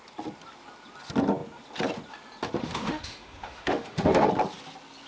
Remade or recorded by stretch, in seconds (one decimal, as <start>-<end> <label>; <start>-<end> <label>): 0.0-2.6 recorded; 2.6-4.3 remade; 4.3-5.1 recorded